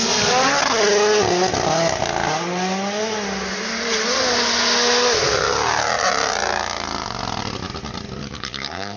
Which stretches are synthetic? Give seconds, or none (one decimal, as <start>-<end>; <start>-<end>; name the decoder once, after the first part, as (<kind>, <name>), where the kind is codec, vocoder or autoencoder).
8.2-9.0 (codec, DAC)